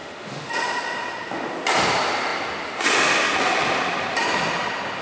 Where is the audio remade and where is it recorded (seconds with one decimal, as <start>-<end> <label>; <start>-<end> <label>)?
0.0-0.5 remade; 0.5-5.0 recorded